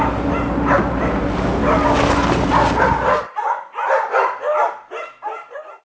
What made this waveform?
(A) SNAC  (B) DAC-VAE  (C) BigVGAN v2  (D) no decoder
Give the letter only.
D